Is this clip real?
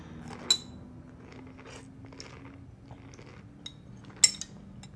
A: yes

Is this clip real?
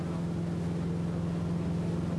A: yes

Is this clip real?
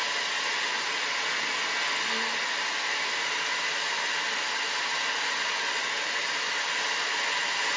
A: yes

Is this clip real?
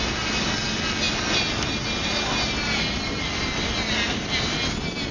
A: yes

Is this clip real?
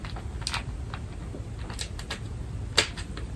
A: yes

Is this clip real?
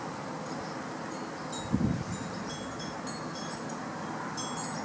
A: yes